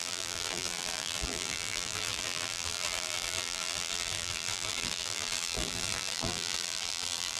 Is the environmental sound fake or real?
fake